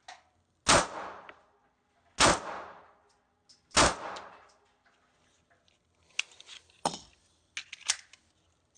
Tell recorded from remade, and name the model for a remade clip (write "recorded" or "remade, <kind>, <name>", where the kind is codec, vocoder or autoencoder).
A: recorded